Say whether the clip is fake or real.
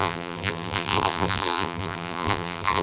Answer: fake